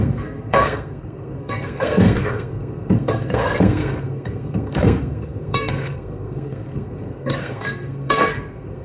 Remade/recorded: remade